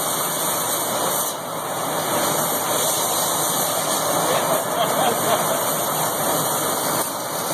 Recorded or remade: recorded